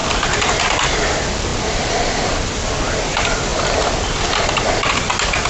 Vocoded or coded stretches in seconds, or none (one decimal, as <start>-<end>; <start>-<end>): none